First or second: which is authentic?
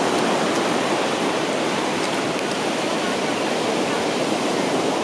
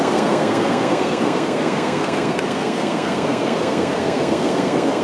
first